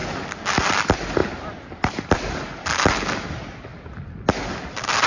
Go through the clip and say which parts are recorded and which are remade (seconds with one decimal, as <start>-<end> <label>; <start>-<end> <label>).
0.0-5.1 recorded

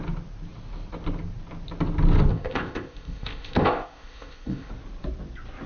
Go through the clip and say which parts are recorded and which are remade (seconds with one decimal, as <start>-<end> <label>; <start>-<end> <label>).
0.0-2.3 recorded; 2.3-4.7 remade; 4.7-5.7 recorded

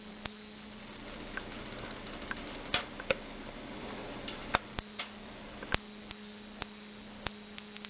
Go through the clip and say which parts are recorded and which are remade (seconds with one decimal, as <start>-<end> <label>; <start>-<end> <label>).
0.0-7.9 recorded